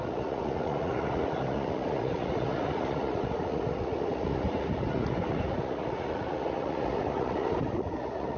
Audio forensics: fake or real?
fake